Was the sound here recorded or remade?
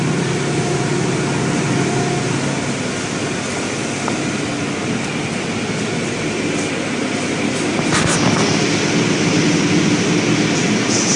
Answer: recorded